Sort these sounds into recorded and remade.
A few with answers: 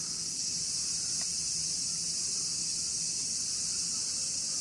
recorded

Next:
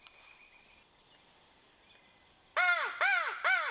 recorded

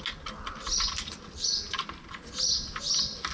recorded